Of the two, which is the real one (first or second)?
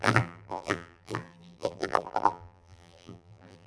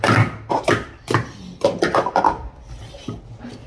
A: second